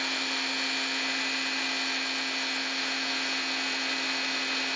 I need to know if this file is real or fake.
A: real